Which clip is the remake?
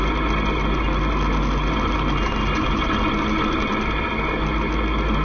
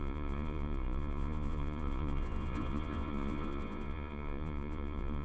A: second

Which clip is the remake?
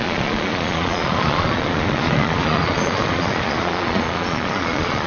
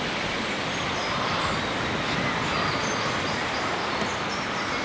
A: first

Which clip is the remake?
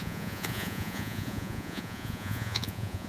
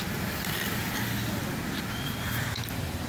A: first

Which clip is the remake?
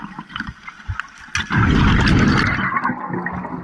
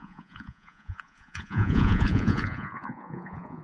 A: second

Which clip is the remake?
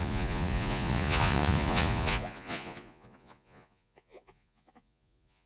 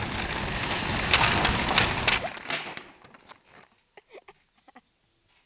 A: first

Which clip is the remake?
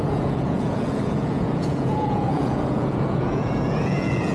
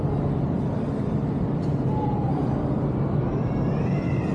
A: first